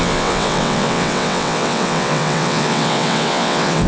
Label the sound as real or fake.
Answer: fake